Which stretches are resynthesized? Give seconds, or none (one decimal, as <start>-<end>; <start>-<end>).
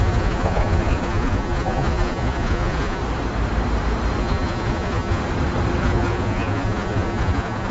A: 0.0-3.0; 4.2-5.2; 5.8-7.7